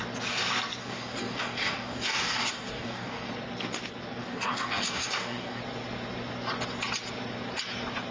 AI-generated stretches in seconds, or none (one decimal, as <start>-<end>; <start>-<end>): 0.8-3.3; 4.2-5.6